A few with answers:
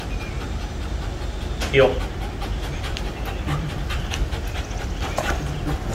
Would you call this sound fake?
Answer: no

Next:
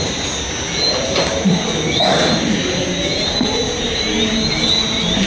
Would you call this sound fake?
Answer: no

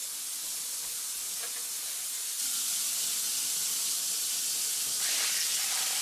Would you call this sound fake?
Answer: no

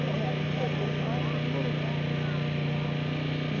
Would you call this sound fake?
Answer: no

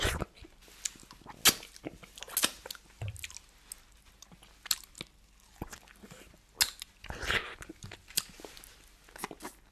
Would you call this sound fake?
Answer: no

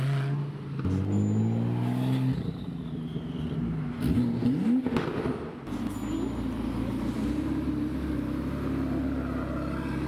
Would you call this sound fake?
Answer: no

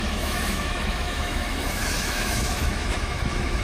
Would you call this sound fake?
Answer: yes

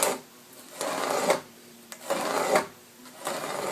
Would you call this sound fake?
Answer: no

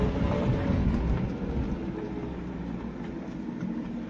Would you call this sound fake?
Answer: no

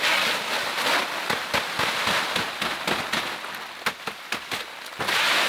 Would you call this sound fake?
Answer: no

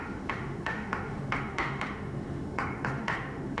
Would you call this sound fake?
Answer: yes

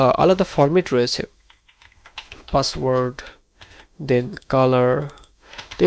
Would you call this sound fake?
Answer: yes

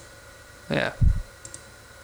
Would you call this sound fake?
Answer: no